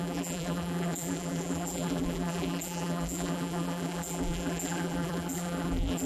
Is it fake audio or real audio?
fake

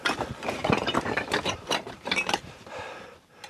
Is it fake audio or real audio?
fake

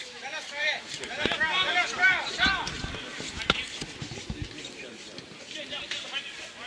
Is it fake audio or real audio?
real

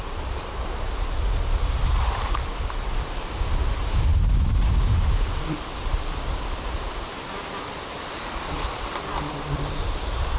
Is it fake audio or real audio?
fake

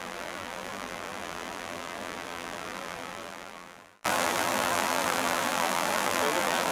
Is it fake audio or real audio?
fake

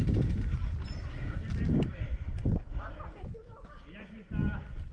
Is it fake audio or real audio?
fake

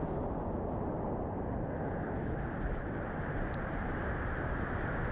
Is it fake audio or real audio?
real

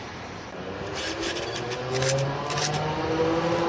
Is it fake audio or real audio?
real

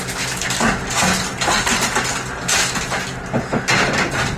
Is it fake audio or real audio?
real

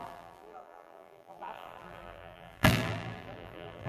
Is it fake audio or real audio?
fake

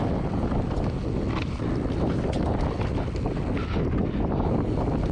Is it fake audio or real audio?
real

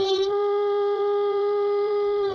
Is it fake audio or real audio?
fake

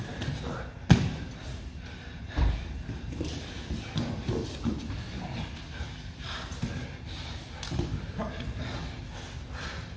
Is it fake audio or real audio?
real